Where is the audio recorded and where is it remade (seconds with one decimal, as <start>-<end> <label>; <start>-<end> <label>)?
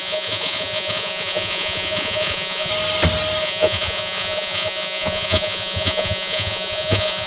0.0-2.7 remade; 2.7-3.4 recorded; 3.4-7.3 remade